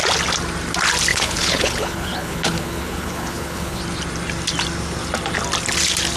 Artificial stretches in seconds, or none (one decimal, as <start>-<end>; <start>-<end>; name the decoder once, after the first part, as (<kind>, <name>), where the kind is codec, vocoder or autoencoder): 1.1-3.8 (codec, HILCodec)